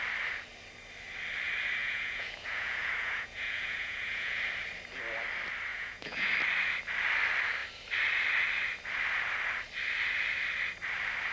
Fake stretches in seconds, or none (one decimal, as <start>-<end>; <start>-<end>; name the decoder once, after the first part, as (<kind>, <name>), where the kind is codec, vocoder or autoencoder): 1.8-4.4 (vocoder, Vocos); 5.7-6.3